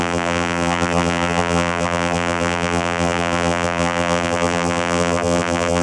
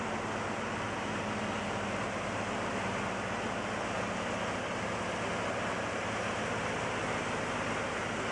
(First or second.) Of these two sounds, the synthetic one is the first